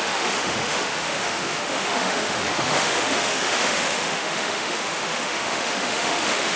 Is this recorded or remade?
remade